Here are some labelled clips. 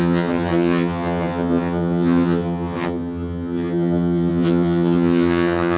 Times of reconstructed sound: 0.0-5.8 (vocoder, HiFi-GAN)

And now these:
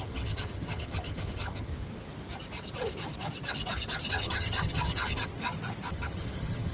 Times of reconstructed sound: 0.0-1.7 (vocoder, HiFi-GAN); 4.1-5.3; 5.9-6.7

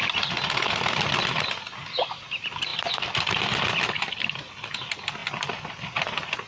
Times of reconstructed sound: none

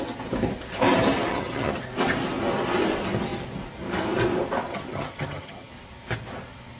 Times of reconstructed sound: 1.3-1.8 (vocoder, HiFi-GAN); 4.7-5.7

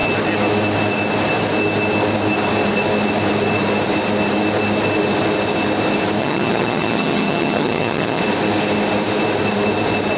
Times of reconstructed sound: 6.2-8.2 (vocoder, HiFi-GAN)

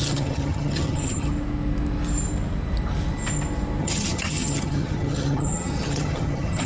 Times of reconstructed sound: 0.0-1.3 (vocoder, HiFi-GAN); 3.8-6.7